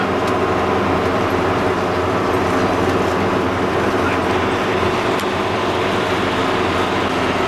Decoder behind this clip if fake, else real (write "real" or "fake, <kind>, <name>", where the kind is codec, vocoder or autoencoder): real